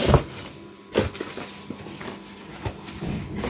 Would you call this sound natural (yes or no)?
yes